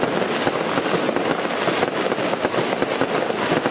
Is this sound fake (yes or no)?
no